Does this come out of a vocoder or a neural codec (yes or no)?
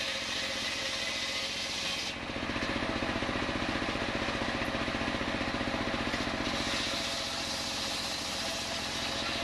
no